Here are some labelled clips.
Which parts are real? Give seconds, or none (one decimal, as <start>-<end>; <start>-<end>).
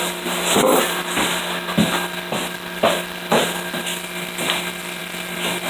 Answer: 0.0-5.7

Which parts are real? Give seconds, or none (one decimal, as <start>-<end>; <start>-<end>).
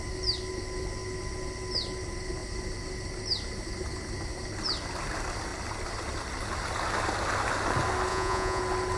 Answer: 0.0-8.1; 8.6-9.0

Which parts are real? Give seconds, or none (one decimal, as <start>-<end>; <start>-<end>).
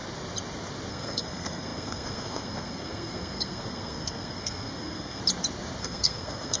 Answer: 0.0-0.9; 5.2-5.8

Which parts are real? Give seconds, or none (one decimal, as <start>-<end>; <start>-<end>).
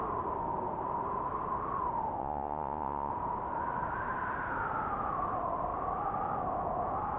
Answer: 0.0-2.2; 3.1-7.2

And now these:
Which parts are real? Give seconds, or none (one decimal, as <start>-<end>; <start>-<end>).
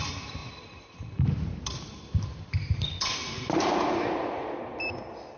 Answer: 0.0-0.4; 3.6-4.7